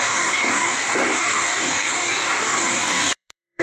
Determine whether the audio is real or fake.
fake